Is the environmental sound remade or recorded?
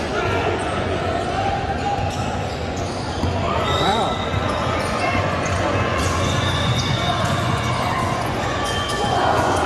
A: remade